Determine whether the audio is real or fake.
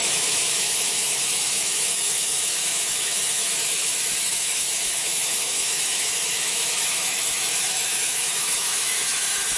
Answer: fake